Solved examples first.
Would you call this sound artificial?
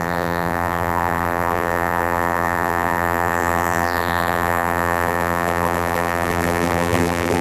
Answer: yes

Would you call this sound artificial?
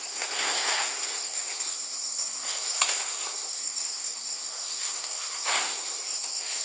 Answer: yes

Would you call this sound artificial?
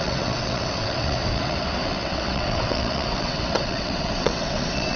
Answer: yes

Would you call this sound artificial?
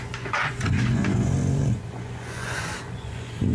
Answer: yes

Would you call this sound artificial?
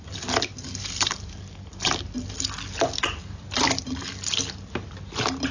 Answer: no